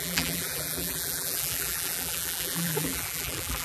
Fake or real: fake